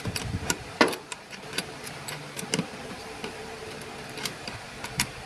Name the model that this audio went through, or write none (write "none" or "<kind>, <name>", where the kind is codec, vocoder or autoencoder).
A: vocoder, BigVGAN v2